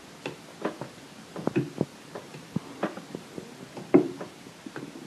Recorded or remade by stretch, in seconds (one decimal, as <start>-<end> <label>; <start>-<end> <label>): 0.0-1.9 recorded; 1.9-5.1 remade